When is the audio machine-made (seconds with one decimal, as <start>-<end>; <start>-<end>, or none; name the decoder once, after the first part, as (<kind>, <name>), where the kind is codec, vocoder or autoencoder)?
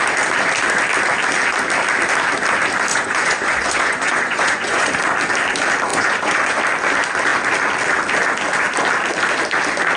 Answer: 2.9-4.9 (vocoder, Vocos); 5.9-6.6